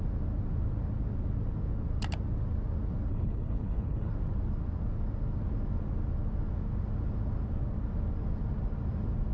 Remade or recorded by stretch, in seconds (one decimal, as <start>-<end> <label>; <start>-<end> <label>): 0.0-3.1 recorded; 3.1-4.1 remade; 4.1-9.3 recorded